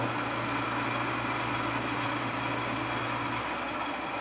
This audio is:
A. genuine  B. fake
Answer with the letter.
A